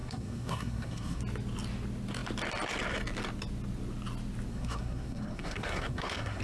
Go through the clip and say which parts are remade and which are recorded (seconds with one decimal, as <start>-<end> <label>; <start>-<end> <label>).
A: 0.0-1.2 remade; 1.2-4.5 recorded; 4.5-6.4 remade